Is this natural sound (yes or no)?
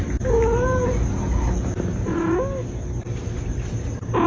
yes